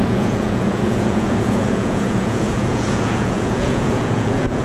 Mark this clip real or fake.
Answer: fake